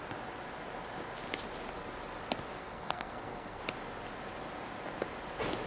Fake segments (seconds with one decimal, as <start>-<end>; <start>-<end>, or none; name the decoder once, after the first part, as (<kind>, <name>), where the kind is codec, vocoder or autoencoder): 2.6-3.6 (codec, SNAC)